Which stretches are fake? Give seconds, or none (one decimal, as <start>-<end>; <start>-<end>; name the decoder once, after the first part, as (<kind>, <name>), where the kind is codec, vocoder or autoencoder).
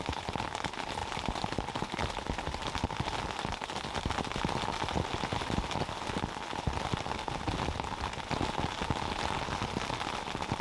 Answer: none